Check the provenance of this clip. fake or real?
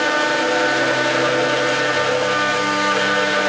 real